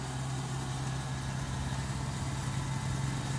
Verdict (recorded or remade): recorded